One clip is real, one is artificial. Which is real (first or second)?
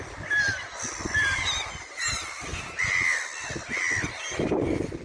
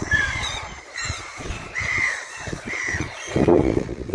first